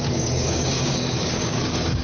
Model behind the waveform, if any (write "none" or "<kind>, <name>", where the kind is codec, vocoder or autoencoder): codec, DAC